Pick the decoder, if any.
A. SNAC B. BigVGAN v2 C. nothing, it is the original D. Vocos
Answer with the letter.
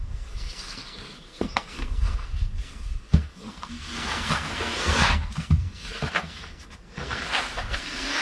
A